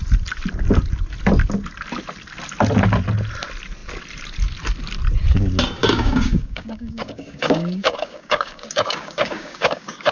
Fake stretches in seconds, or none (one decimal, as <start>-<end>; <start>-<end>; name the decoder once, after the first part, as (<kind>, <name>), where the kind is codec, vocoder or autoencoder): 5.8-10.1 (codec, DAC)

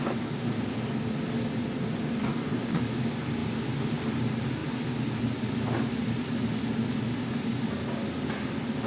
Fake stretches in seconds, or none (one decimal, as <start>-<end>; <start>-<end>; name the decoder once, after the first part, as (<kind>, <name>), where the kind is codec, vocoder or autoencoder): 2.2-2.8 (codec, DAC)

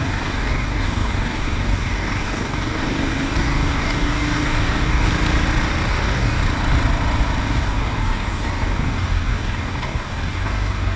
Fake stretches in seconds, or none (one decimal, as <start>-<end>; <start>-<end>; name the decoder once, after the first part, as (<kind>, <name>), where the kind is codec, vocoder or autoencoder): 0.0-5.1 (codec, DAC); 5.9-6.4; 7.4-11.0

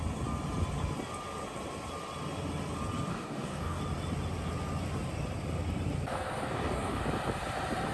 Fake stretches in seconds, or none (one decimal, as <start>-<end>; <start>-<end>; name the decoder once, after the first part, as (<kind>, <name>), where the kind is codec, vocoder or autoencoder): 3.1-3.8 (codec, DAC); 6.5-7.0

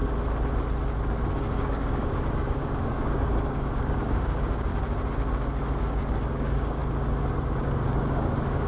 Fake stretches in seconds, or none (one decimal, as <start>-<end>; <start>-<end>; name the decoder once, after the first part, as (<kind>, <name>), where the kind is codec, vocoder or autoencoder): 1.3-4.7 (codec, DAC); 5.8-6.8; 7.6-8.7

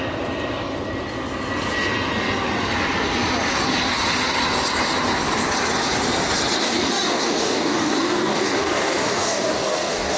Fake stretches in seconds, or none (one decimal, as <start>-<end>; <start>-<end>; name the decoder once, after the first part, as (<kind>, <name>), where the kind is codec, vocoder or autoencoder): 6.6-10.2 (codec, DAC)

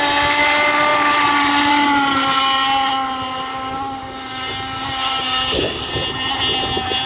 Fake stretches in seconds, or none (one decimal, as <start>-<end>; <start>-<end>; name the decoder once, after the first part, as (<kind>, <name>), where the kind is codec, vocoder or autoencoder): 3.5-5.9 (codec, DAC)

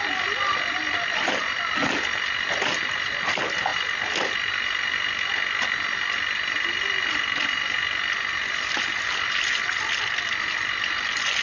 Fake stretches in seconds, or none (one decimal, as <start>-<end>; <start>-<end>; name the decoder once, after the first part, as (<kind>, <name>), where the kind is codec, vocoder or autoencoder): none